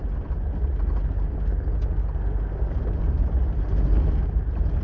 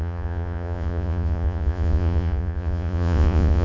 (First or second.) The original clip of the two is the first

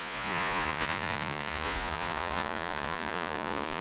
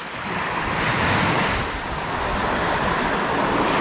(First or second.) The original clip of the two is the second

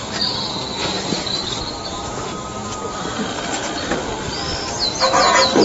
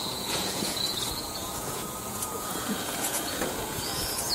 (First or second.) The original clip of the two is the first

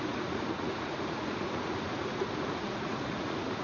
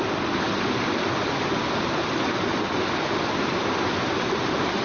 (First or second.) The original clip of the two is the second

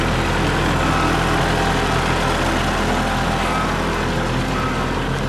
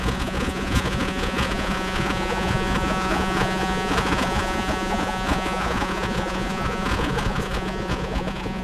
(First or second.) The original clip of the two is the first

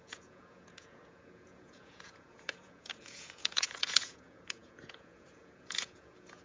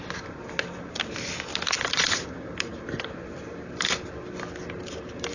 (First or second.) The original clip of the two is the second